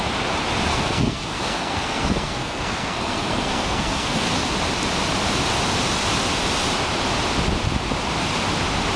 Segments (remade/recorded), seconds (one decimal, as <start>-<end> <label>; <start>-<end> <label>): 0.0-0.7 recorded; 0.7-4.3 remade; 4.3-9.0 recorded